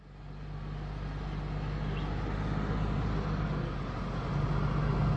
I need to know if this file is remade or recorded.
recorded